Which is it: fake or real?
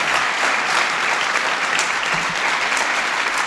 real